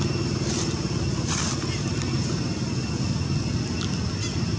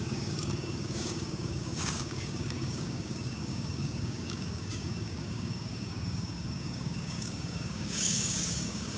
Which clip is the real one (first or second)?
first